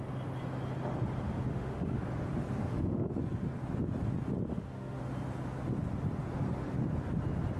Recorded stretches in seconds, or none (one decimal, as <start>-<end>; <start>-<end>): 0.0-1.5; 2.0-2.6; 3.1-4.5; 5.0-7.6